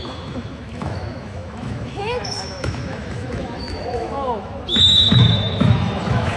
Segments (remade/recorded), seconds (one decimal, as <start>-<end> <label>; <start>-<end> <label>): 0.0-6.4 remade